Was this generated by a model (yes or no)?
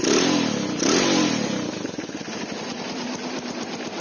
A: yes